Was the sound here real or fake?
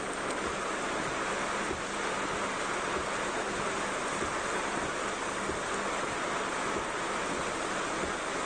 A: real